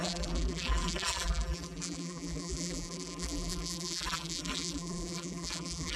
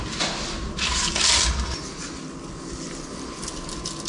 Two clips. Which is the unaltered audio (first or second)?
second